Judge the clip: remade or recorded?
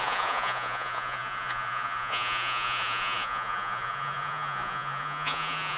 remade